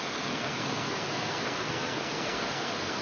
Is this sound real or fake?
fake